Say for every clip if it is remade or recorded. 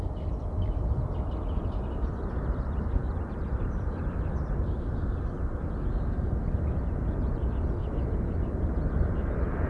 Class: recorded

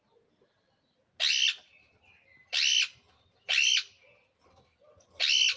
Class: recorded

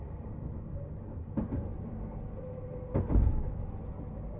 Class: recorded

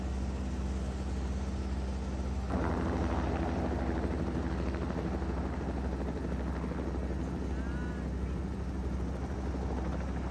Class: recorded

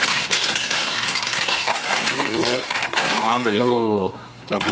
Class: remade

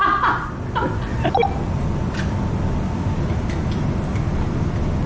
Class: recorded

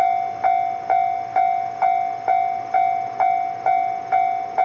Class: recorded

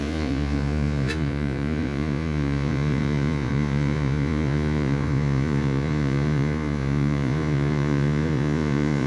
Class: remade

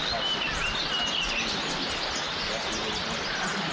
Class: recorded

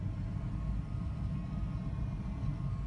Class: recorded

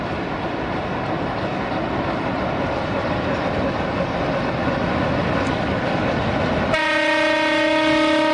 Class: recorded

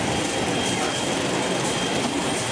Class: recorded